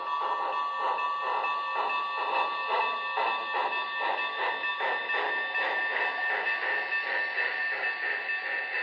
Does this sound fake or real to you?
real